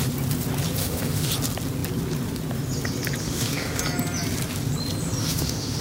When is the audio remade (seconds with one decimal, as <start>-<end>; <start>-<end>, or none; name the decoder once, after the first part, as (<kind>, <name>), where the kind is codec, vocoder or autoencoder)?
0.8-1.3 (autoencoder, DAC-VAE); 3.2-3.8; 5.2-5.8